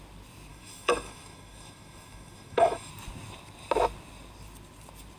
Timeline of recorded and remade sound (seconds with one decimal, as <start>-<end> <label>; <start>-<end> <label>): 0.0-0.5 recorded; 0.5-2.9 remade; 2.9-5.2 recorded